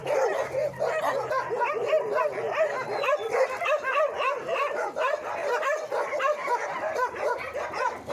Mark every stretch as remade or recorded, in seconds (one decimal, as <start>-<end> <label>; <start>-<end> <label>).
0.0-8.1 recorded